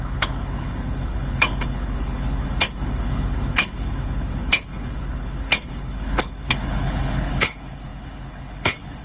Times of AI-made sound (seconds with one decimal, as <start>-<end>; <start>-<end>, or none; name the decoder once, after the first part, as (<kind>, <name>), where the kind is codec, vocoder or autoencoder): 0.0-9.0 (codec, HILCodec)